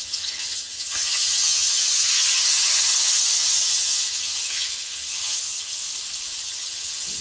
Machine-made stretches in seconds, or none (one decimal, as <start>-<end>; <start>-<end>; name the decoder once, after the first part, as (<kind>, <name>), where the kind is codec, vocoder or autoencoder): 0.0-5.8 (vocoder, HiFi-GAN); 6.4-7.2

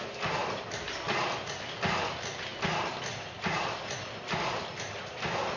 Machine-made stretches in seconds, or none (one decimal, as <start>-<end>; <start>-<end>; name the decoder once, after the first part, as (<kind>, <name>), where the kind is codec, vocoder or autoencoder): 0.0-5.6 (vocoder, BigVGAN v2)

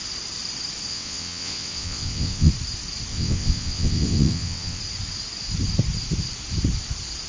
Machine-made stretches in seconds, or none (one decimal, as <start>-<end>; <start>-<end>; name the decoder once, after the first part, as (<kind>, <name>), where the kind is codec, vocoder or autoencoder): 0.9-2.5 (vocoder, WaveNeXt); 3.1-4.8

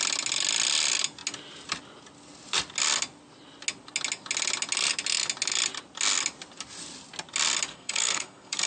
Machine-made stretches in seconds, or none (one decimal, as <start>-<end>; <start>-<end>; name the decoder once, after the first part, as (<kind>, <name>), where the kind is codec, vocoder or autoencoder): 7.7-8.7 (codec, SNAC)